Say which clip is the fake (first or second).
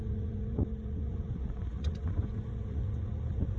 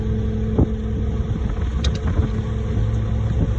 first